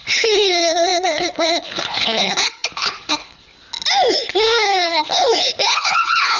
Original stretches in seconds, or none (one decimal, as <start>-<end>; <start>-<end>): 3.5-4.1